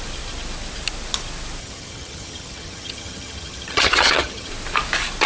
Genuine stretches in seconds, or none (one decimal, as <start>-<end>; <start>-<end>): 0.0-1.6; 4.5-5.3